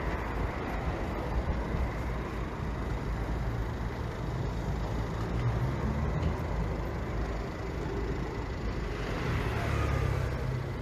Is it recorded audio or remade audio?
recorded